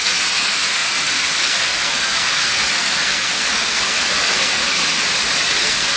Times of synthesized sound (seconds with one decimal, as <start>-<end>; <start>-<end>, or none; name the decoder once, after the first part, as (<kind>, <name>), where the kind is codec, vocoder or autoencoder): 0.0-4.6 (codec, SNAC); 5.6-6.0